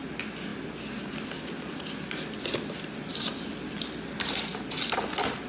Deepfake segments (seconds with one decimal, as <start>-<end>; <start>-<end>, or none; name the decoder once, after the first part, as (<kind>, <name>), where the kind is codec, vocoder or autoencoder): none